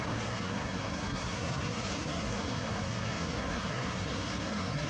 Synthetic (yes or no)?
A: yes